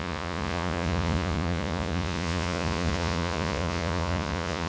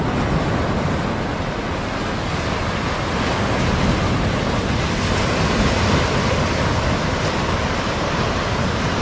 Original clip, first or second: second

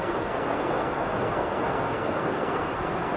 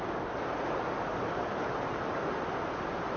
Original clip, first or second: second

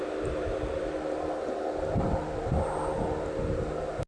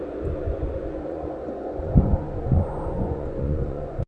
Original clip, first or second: first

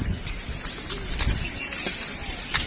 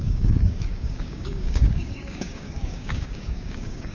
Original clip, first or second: first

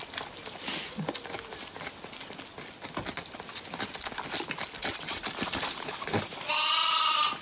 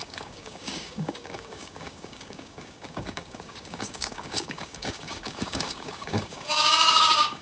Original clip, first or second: first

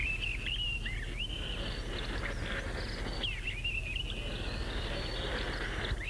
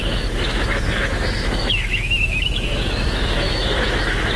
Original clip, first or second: first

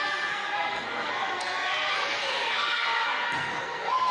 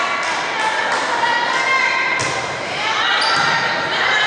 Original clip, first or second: second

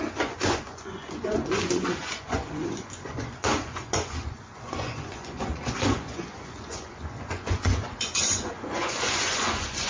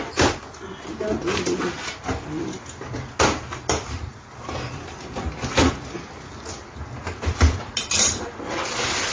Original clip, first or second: second